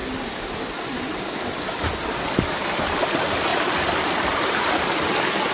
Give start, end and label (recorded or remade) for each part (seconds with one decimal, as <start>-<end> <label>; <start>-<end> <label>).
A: 0.0-3.5 recorded; 3.5-4.7 remade; 4.7-5.5 recorded